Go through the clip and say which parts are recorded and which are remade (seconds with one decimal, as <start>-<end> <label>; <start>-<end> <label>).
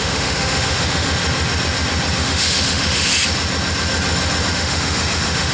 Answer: 0.0-1.2 remade; 1.2-2.2 recorded; 2.2-3.1 remade; 3.1-4.5 recorded; 4.5-5.5 remade